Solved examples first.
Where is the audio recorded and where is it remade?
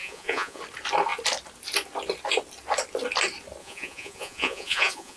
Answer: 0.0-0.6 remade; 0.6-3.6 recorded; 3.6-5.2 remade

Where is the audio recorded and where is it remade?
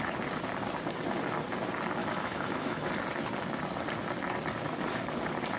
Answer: 0.0-2.0 recorded; 2.0-2.9 remade; 2.9-5.6 recorded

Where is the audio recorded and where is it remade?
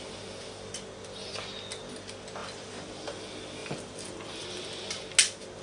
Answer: 0.0-2.4 recorded; 2.4-3.2 remade; 3.2-3.6 recorded; 3.6-4.4 remade; 4.4-5.6 recorded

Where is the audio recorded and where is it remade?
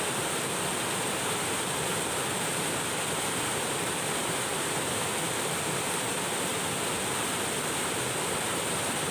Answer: 0.0-6.5 remade; 6.5-7.9 recorded; 7.9-9.1 remade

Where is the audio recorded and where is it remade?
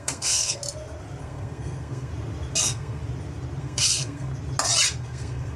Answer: 0.0-0.6 remade; 0.6-1.2 recorded; 1.2-2.1 remade; 2.1-2.6 recorded; 2.6-3.0 remade; 3.0-3.6 recorded; 3.6-4.3 remade; 4.3-5.0 recorded; 5.0-5.6 remade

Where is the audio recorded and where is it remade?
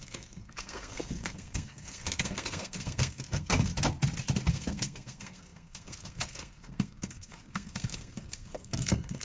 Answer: 0.0-3.7 remade; 3.7-4.5 recorded; 4.5-9.2 remade